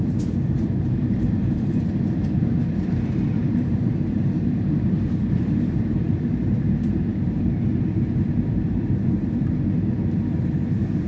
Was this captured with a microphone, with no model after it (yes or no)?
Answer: no